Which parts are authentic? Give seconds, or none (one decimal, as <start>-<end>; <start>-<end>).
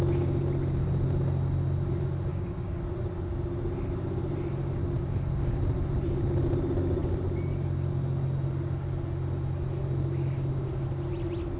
0.0-2.3; 2.8-11.6